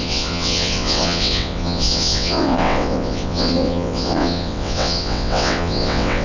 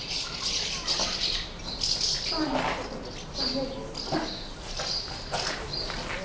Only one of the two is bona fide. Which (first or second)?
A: second